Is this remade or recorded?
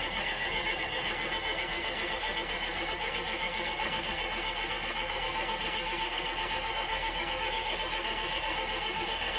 remade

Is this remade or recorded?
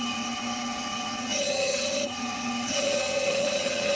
remade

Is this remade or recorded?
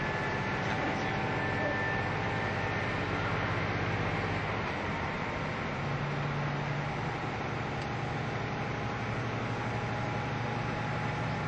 recorded